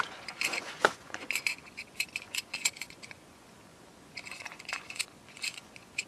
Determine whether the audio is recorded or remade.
remade